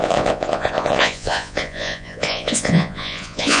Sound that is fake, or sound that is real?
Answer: fake